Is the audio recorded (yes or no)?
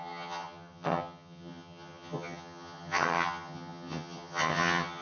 no